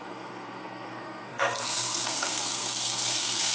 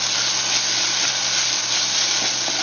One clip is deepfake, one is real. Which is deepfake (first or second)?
first